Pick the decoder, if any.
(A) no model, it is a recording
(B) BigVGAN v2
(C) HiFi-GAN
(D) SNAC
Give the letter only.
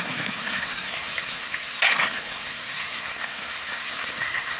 D